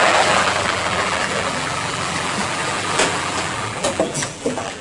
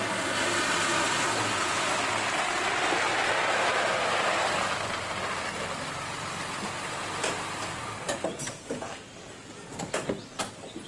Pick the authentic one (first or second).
second